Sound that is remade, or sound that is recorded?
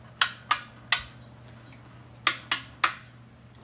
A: recorded